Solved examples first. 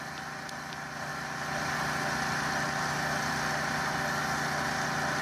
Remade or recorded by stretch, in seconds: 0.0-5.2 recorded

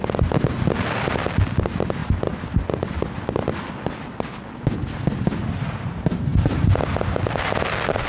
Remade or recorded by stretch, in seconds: 0.0-8.1 recorded